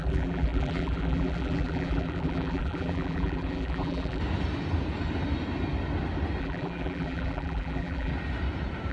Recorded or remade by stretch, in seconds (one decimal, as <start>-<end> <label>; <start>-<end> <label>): 0.0-4.2 remade; 4.2-6.4 recorded; 6.4-8.1 remade; 8.1-8.9 recorded